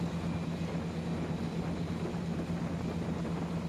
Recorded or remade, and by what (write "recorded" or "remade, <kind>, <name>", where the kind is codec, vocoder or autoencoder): recorded